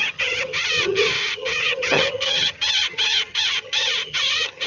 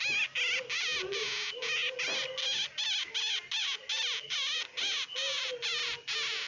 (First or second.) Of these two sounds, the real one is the second